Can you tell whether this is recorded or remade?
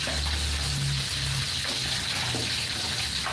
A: recorded